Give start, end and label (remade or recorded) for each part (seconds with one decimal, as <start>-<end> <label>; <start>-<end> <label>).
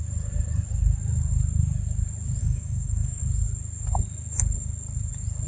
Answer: 0.0-2.4 recorded; 2.4-3.2 remade; 3.2-5.5 recorded